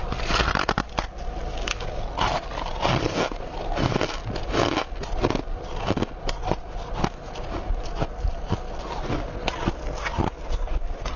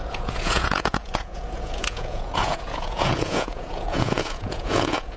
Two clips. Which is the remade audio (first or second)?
second